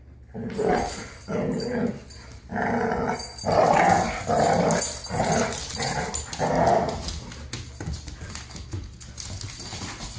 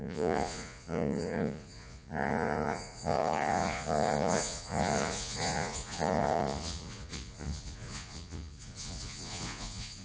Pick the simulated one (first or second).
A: second